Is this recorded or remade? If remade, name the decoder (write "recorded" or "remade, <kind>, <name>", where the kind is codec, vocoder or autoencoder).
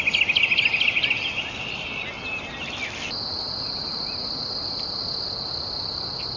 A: recorded